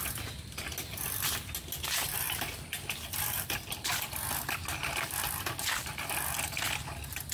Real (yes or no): yes